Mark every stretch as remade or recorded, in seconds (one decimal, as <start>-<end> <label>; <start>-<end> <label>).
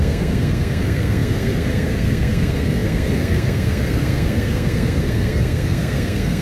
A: 0.0-6.4 remade